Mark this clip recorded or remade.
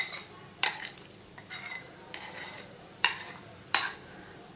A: remade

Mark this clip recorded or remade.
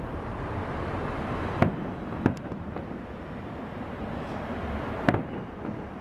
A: remade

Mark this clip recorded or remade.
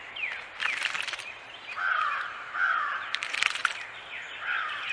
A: remade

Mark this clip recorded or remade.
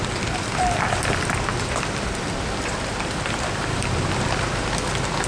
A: remade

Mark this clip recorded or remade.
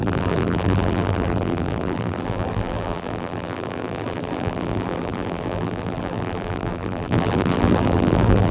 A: remade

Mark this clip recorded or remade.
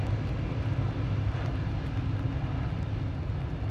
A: recorded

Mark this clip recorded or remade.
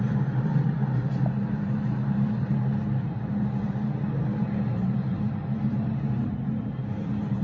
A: remade